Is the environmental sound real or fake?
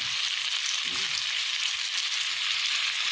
real